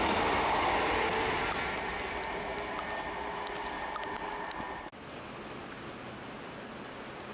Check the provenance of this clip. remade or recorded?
recorded